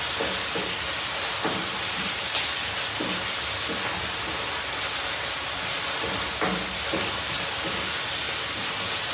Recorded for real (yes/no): yes